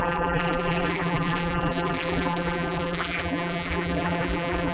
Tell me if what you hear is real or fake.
fake